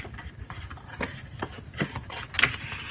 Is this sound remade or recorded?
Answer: recorded